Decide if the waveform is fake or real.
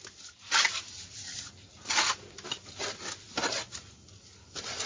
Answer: real